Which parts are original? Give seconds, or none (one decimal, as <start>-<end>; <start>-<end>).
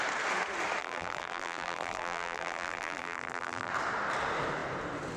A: 0.0-0.8; 3.7-5.2